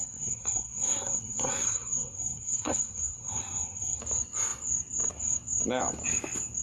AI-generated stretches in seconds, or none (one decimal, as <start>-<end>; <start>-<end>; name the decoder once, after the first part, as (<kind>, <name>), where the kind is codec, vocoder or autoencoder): 0.0-4.0 (codec, SNAC)